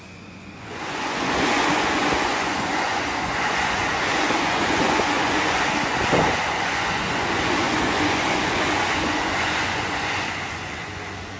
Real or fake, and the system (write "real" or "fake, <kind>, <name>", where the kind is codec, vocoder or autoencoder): fake, vocoder, Vocos